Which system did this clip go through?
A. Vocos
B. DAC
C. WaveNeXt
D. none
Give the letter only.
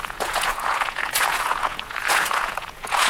A